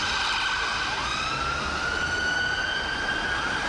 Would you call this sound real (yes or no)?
yes